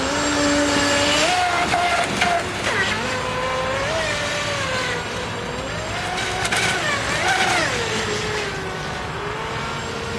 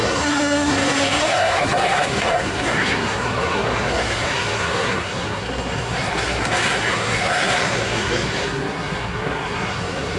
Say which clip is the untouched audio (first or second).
first